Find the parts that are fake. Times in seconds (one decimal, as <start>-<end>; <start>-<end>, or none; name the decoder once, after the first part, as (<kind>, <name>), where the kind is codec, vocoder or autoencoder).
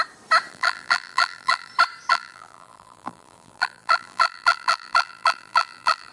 0.5-1.7 (vocoder, BigVGAN v2); 2.1-6.1